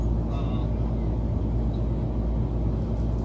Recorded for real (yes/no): yes